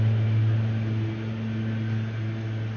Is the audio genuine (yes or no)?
yes